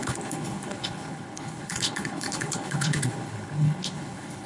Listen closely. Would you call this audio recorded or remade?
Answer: remade